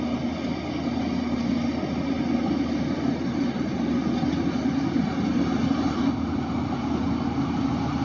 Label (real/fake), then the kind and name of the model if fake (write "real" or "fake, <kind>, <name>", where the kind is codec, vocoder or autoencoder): real